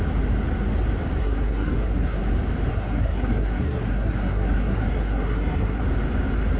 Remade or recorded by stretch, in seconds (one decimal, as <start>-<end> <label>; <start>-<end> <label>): 0.0-1.2 recorded; 1.2-2.2 remade; 2.2-2.7 recorded; 2.7-5.8 remade; 5.8-6.6 recorded